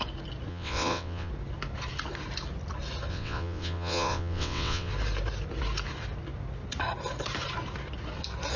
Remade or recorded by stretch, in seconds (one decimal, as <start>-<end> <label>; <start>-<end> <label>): 0.0-0.5 recorded; 0.5-1.3 remade; 1.3-3.1 recorded; 3.1-4.9 remade; 4.9-8.6 recorded